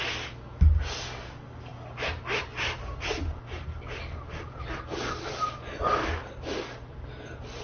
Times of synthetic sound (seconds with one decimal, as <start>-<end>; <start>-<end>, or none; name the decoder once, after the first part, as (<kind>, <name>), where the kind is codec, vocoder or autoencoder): none